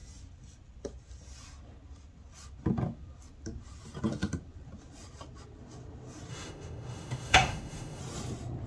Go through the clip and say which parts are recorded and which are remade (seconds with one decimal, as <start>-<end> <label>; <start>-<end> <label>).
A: 0.0-6.3 recorded; 6.3-8.0 remade; 8.0-8.7 recorded